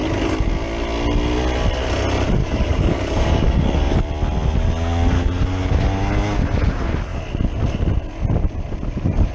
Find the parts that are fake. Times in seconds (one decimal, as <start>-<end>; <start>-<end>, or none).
2.4-4.0